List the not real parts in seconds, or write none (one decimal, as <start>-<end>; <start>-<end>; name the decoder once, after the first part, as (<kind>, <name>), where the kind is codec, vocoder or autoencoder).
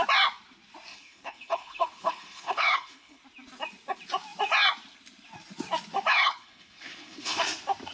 0.9-3.2 (codec, HILCodec); 6.1-7.4